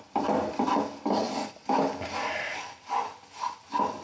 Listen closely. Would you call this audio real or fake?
real